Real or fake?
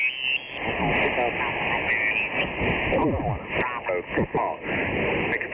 real